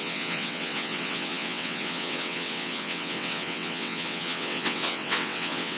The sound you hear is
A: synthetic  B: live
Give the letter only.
A